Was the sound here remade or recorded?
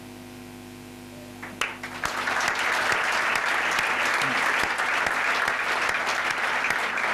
recorded